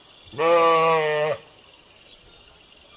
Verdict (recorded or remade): recorded